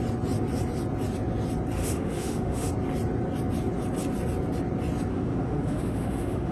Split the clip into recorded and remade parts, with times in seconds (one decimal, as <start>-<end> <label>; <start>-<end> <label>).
0.0-1.8 recorded; 1.8-2.7 remade; 2.7-5.1 recorded; 5.1-6.5 remade

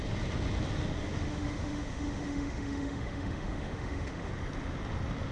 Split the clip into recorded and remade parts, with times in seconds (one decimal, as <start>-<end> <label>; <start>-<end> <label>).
0.0-1.1 recorded; 1.1-4.3 remade; 4.3-5.3 recorded

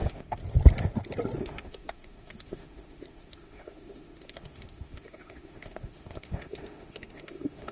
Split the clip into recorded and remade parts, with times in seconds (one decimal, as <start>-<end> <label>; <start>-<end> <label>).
0.0-0.4 remade; 0.4-1.4 recorded; 1.4-7.7 remade

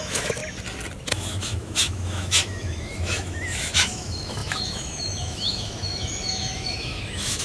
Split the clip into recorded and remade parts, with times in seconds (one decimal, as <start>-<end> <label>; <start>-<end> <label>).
0.0-0.4 remade; 0.4-1.1 recorded; 1.1-7.4 remade

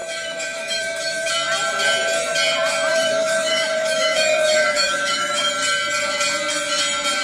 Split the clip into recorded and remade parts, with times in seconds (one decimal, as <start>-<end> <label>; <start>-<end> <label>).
0.0-1.3 remade; 1.3-2.9 recorded; 2.9-5.5 remade; 5.5-7.2 recorded

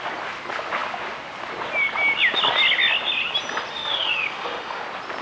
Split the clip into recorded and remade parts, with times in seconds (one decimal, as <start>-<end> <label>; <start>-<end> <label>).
0.0-3.7 recorded; 3.7-4.8 remade; 4.8-5.2 recorded